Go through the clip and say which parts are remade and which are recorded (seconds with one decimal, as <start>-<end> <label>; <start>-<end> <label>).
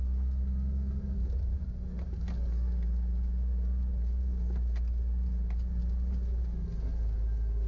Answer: 0.0-7.7 recorded